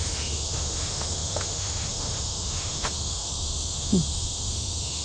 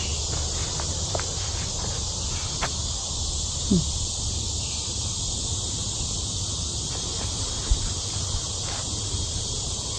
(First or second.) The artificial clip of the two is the first